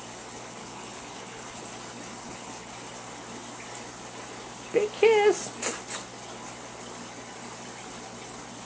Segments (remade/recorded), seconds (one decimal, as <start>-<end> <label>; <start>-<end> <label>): 0.0-0.6 recorded; 0.6-1.6 remade; 1.6-2.2 recorded; 2.2-2.7 remade; 2.7-8.7 recorded